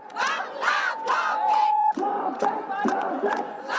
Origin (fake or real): fake